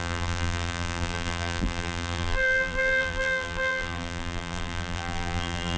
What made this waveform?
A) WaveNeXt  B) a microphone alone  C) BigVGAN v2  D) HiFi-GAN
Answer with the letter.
C